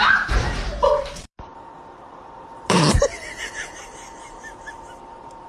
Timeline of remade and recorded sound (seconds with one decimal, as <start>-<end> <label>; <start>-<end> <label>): 0.0-5.5 remade